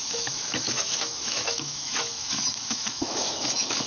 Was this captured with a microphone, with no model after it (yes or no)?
no